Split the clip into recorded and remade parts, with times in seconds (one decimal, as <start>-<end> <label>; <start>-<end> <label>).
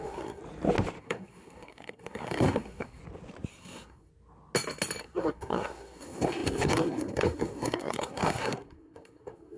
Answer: 0.0-0.4 remade; 0.4-1.0 recorded; 1.0-3.0 remade; 3.0-3.5 recorded; 3.5-4.1 remade; 4.1-5.0 recorded; 5.0-9.6 remade